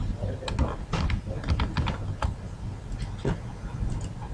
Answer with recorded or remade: recorded